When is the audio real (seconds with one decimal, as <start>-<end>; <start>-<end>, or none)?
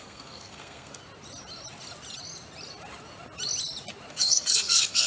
1.0-4.1